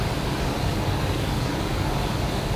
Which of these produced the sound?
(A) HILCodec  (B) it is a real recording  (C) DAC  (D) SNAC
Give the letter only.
C